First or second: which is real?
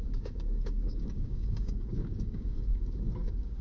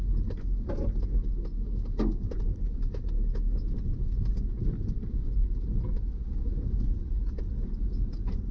second